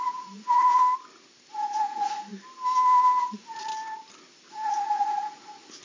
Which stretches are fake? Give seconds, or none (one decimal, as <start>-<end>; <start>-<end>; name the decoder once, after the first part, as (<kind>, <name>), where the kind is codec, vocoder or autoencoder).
0.0-0.8 (vocoder, Vocos); 1.5-2.3; 3.2-3.7; 4.5-5.8